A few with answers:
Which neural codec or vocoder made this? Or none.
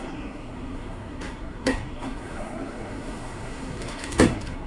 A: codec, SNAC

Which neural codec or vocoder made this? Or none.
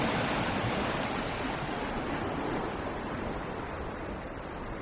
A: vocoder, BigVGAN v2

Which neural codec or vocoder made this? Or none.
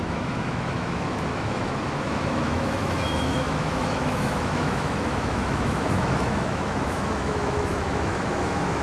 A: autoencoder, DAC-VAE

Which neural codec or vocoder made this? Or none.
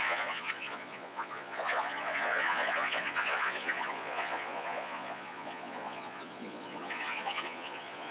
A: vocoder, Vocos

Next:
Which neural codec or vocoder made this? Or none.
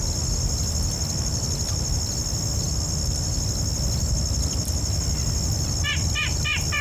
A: none